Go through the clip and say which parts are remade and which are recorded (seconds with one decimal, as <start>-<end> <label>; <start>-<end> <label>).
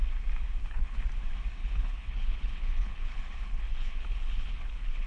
0.0-0.6 recorded; 0.6-1.1 remade; 1.1-1.6 recorded; 1.6-5.1 remade